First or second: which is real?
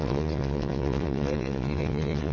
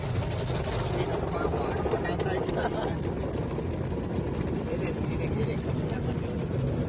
second